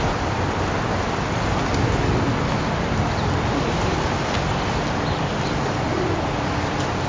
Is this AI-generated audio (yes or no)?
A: no